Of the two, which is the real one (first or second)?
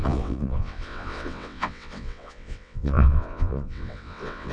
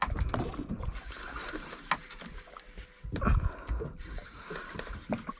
second